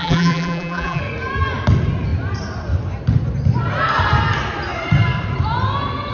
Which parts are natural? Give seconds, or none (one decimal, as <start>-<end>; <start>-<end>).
1.0-6.1